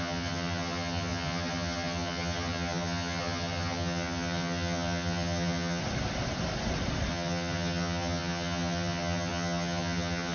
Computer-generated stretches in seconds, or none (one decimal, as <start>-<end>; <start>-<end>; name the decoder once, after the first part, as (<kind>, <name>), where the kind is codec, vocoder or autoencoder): 0.0-5.8 (vocoder, HiFi-GAN); 7.1-10.3